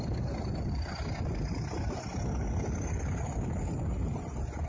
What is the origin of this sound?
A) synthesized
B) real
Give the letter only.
B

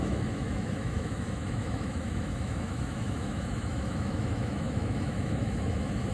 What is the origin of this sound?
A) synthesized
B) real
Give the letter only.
A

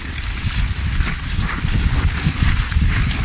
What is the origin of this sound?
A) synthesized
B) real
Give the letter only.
B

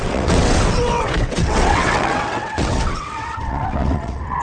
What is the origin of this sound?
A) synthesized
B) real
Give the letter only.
A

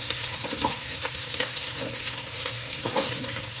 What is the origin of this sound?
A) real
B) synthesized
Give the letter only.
B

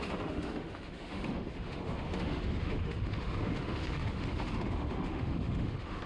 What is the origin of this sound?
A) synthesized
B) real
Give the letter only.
A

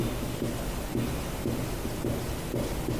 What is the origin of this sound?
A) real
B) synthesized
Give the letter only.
A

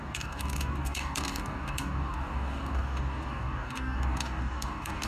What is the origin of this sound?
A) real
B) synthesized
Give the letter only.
B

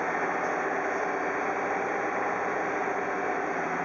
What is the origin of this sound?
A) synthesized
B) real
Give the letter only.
B